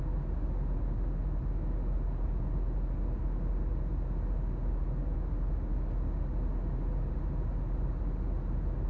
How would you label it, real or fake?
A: real